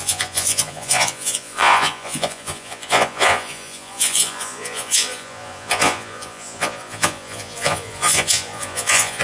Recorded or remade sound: remade